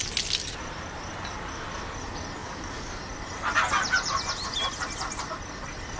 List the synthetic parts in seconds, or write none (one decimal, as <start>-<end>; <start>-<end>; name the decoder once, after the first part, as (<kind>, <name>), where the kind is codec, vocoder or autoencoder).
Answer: 2.4-3.0 (codec, DAC)